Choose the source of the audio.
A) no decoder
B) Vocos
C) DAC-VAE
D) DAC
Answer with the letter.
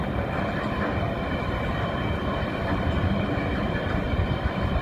A